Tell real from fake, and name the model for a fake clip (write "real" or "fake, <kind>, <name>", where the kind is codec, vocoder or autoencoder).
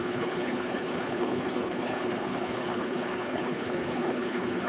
fake, codec, HILCodec